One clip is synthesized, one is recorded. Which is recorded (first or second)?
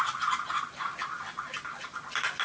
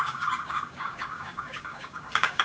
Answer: first